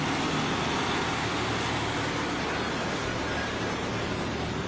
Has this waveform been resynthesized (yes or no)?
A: no